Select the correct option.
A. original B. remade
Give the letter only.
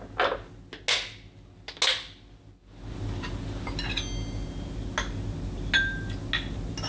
A